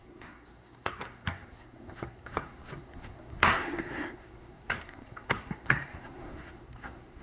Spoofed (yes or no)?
yes